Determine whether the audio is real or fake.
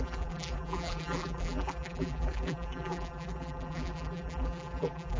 fake